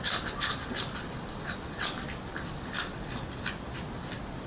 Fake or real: real